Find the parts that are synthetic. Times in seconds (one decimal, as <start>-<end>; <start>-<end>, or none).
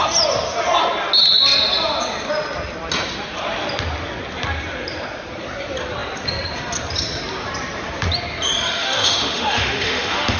8.8-10.4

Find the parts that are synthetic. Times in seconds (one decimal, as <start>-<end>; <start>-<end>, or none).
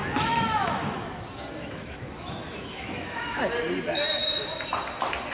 0.0-1.2; 1.6-3.4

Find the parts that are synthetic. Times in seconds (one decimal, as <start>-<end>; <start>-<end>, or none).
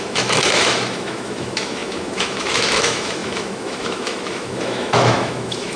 0.0-5.8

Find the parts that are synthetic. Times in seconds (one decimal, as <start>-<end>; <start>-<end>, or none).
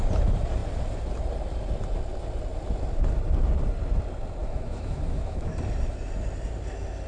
4.4-5.5